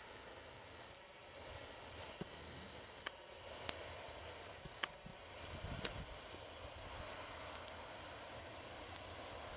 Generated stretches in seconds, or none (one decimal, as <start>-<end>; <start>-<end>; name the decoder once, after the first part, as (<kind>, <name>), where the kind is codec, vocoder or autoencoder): 5.1-5.6 (vocoder, BigVGAN v2)